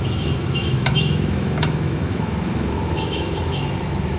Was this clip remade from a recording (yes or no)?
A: yes